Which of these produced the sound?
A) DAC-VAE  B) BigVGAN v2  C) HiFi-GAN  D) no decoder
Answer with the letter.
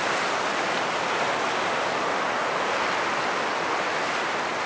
D